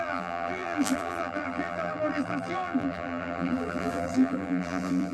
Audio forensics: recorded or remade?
remade